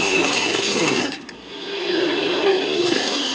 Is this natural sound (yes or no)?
no